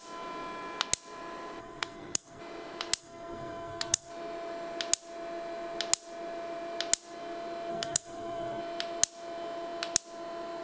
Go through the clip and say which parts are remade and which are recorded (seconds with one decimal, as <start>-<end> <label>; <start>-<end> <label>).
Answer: 0.0-1.6 recorded; 1.6-2.4 remade; 2.4-3.0 recorded; 3.0-4.1 remade; 4.1-7.7 recorded; 7.7-8.6 remade; 8.6-10.6 recorded